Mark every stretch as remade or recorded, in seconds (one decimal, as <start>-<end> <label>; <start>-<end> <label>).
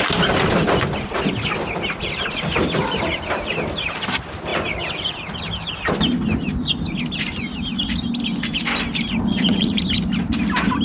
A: 0.0-9.3 recorded; 9.3-9.8 remade; 9.8-10.8 recorded